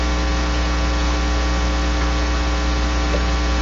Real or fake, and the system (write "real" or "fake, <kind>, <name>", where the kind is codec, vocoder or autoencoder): real